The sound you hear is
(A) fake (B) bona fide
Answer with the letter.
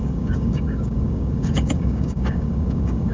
A